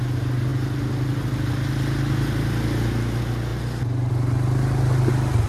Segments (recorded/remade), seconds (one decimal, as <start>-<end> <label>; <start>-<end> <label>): 0.0-5.5 recorded